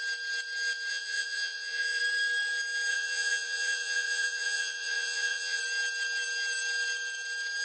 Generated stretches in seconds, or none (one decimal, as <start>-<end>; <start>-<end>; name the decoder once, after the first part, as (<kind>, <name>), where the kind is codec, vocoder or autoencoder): 0.9-2.0 (vocoder, Vocos); 2.9-5.6